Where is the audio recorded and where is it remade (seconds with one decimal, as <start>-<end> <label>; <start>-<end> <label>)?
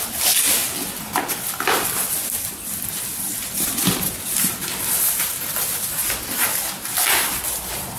0.0-8.0 recorded